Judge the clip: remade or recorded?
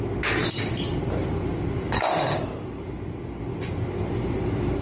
recorded